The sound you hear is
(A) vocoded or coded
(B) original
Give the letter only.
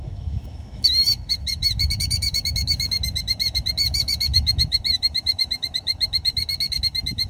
A